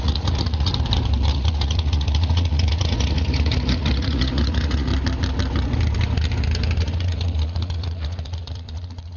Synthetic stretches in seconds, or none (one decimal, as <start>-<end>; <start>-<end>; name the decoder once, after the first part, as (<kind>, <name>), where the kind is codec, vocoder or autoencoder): 0.0-0.7 (vocoder, Vocos); 1.3-4.9; 6.8-9.2